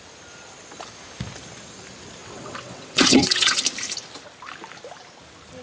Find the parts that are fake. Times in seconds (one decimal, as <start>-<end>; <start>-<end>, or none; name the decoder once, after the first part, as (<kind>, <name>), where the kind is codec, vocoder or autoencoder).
2.2-3.6 (vocoder, WaveNeXt)